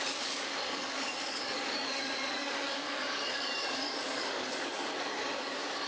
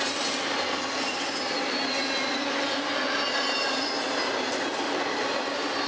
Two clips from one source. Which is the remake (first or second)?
first